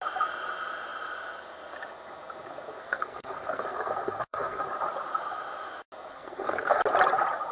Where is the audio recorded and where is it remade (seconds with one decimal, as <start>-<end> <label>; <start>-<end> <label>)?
0.0-2.8 recorded; 2.8-4.6 remade; 4.6-6.1 recorded; 6.1-6.8 remade; 6.8-7.5 recorded